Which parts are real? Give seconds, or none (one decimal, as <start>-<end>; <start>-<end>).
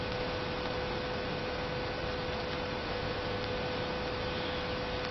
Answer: 0.0-2.8; 3.4-5.1